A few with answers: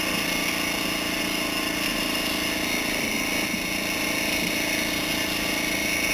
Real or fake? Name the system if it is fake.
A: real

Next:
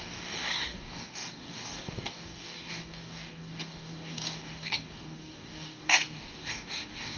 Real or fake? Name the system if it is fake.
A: fake, codec, DAC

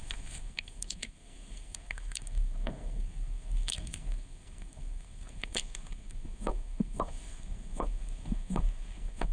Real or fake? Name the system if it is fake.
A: fake, codec, SNAC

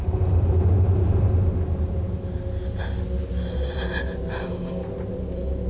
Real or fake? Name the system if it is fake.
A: real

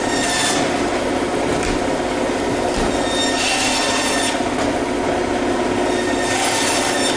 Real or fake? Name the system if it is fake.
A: real